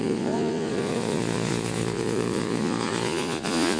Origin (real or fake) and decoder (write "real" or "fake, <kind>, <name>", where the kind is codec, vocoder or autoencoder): fake, vocoder, Vocos